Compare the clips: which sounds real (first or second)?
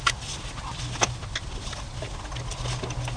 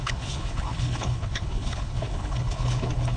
first